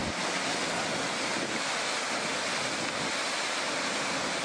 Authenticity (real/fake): real